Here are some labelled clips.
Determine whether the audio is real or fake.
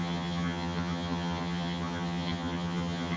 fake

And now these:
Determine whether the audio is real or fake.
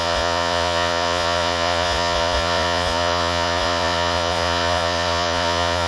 fake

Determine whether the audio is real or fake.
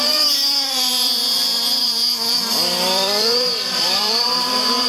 fake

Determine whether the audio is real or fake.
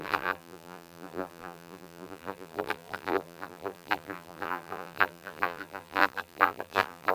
fake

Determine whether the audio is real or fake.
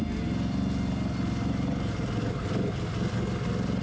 real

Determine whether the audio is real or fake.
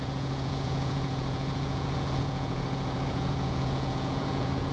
fake